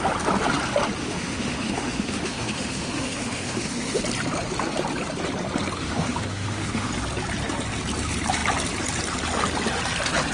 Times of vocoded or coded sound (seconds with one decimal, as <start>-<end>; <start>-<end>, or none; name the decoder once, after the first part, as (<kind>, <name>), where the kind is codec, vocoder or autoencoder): 1.0-4.0 (autoencoder, DAC-VAE); 5.8-6.9